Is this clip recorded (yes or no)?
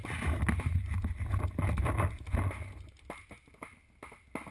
yes